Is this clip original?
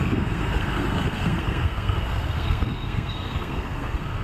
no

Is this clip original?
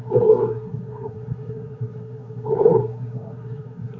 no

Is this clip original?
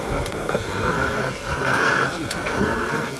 no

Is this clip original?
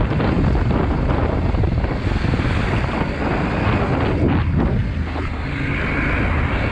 yes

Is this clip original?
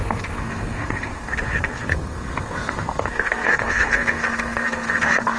no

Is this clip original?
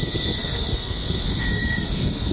no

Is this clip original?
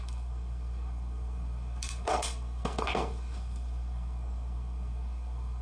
no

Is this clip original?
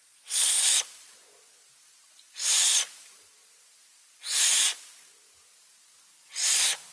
yes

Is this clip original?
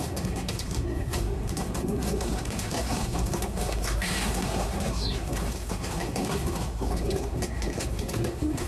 no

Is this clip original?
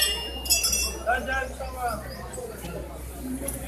yes